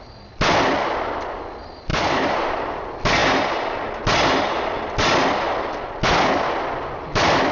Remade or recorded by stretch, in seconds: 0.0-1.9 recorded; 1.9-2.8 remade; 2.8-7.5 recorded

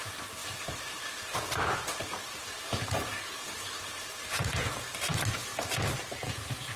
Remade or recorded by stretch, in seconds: 0.0-5.5 remade; 5.5-6.1 recorded; 6.1-6.8 remade